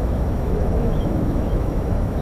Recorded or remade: remade